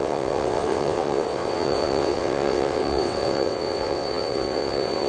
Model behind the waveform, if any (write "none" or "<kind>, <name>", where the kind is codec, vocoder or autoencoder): vocoder, WaveNeXt